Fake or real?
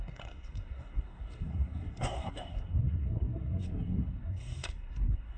fake